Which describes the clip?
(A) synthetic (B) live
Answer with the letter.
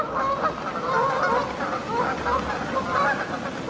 B